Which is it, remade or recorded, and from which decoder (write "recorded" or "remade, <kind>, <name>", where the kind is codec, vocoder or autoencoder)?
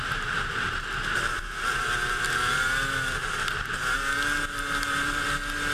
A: recorded